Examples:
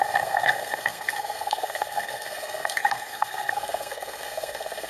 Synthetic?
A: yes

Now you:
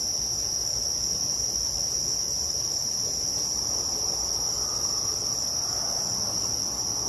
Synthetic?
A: no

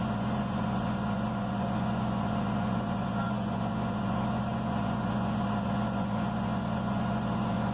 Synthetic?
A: yes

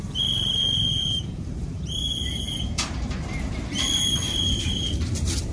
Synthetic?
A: yes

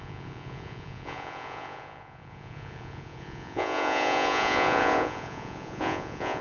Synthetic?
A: yes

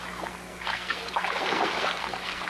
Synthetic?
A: yes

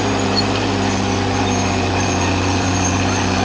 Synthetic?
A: yes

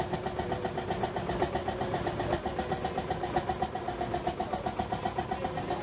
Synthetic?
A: no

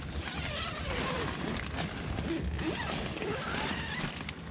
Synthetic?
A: no